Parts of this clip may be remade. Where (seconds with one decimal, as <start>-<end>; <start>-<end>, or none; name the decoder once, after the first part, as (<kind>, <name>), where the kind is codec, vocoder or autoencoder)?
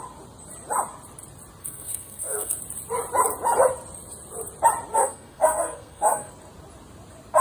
1.6-2.6 (codec, SNAC); 4.9-6.3